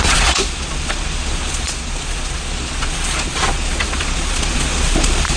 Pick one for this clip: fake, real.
fake